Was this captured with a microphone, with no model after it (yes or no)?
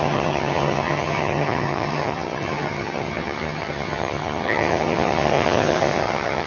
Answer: no